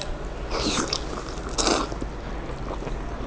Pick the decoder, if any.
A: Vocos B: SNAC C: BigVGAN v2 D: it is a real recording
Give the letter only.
D